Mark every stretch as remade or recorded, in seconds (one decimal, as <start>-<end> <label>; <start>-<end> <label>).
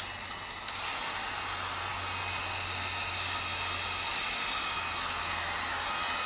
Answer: 0.0-6.3 recorded